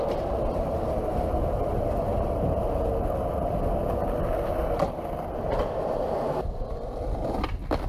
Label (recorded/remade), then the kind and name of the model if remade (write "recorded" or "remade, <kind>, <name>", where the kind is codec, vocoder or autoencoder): recorded